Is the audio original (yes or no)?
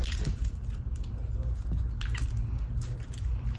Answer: yes